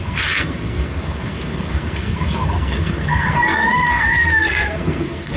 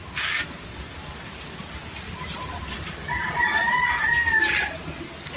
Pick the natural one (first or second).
second